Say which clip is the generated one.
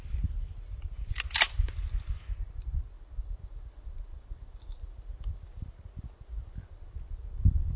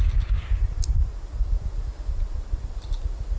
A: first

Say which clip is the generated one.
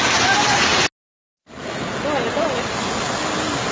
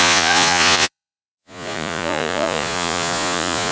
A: second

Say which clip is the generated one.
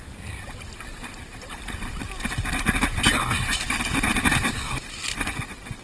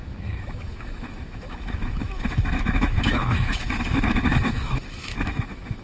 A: second